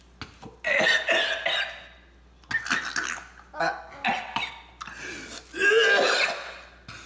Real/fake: real